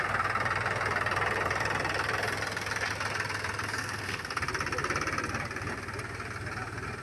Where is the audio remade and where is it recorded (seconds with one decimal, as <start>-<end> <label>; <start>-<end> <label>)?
0.0-3.8 recorded; 3.8-4.4 remade; 4.4-7.0 recorded